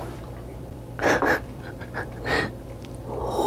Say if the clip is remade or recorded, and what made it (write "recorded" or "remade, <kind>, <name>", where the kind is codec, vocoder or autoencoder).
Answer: remade, vocoder, BigVGAN v2